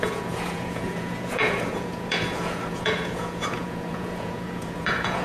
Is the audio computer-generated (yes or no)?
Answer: yes